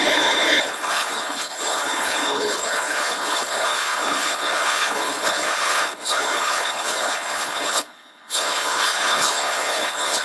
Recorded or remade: remade